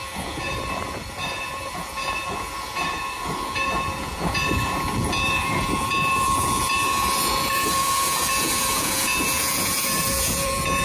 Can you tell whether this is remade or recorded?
remade